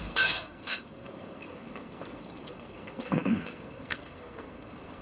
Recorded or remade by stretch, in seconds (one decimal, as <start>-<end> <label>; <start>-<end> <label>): 0.0-5.0 remade